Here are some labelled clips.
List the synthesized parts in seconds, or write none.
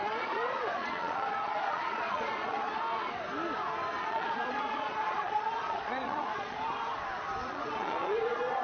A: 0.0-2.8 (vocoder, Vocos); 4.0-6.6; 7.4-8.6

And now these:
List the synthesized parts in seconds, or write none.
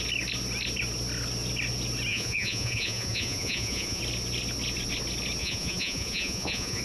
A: 2.1-4.0 (vocoder, Vocos); 5.4-6.8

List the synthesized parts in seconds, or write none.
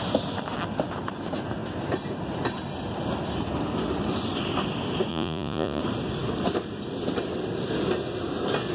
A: 5.1-5.8 (vocoder, Vocos)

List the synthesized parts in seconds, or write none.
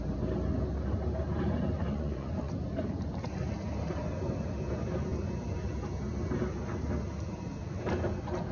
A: 1.8-2.5 (vocoder, Vocos)